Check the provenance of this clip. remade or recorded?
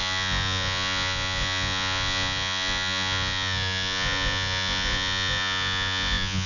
remade